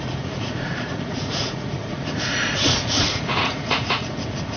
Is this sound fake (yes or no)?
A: yes